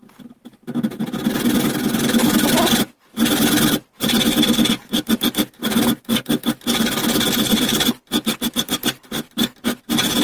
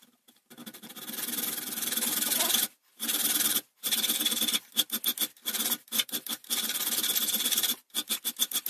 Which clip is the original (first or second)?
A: first